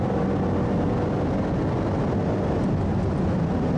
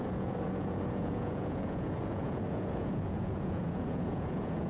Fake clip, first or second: second